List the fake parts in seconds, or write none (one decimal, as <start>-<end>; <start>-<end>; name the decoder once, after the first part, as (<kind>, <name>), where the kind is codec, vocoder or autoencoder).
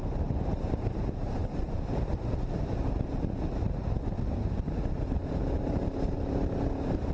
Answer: 0.0-7.1 (vocoder, BigVGAN v2)